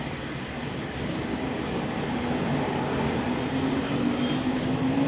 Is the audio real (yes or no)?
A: yes